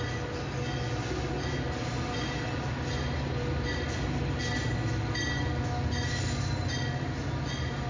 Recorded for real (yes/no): yes